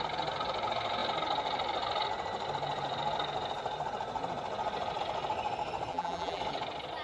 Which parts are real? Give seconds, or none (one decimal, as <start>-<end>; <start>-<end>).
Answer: 0.0-5.9; 6.4-7.0